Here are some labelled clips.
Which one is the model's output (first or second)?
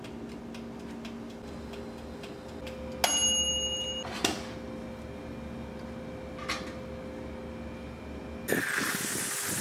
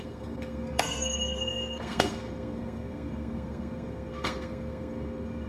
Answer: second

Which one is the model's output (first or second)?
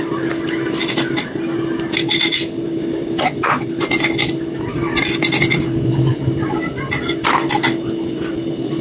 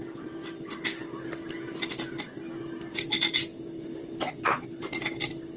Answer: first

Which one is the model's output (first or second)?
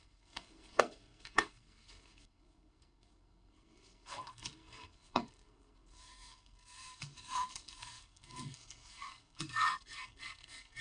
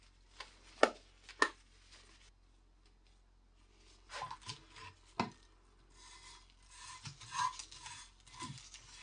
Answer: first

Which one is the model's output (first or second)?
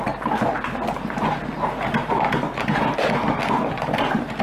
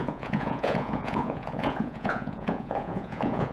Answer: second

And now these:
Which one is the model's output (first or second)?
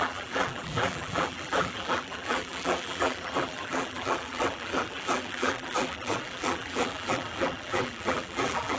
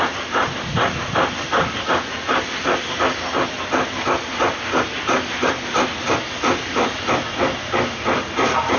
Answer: first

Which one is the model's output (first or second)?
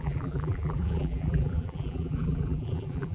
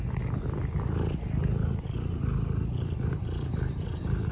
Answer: first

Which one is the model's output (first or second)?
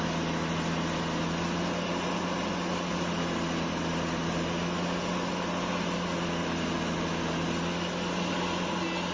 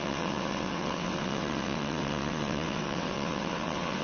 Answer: second